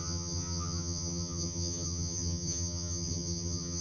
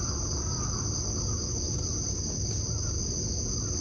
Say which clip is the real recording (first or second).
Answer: second